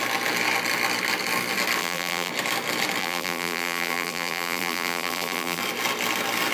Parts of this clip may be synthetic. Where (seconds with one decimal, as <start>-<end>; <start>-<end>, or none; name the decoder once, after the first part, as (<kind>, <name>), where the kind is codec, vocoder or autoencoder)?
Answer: 1.8-2.3 (vocoder, BigVGAN v2); 3.0-5.6